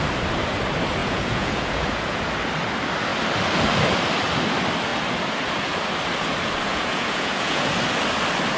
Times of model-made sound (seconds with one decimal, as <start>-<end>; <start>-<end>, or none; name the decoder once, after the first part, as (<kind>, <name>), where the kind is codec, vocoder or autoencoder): 1.0-2.3 (vocoder, Vocos); 6.7-7.7